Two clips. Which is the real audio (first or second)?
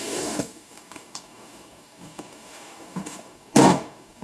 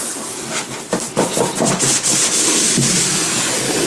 second